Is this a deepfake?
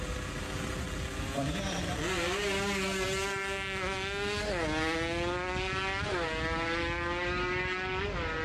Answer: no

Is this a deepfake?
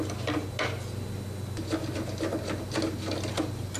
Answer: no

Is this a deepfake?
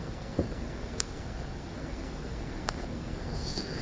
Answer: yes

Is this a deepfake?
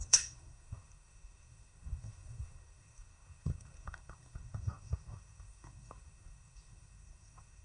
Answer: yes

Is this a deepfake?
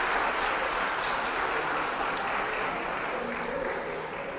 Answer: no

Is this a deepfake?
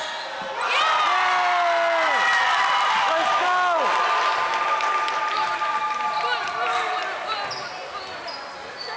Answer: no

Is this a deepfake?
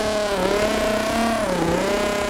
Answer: no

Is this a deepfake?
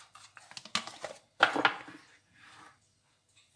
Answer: no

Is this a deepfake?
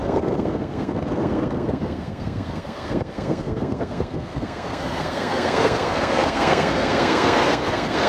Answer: yes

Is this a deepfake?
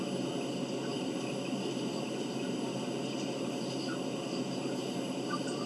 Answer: no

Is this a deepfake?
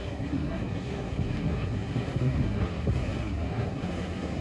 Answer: yes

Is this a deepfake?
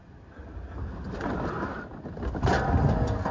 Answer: no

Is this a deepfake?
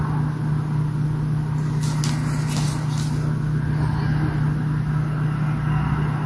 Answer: no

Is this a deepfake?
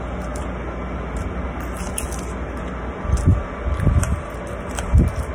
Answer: no